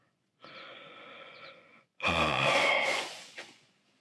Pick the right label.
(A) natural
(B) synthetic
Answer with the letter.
B